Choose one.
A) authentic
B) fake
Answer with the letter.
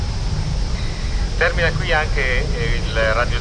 A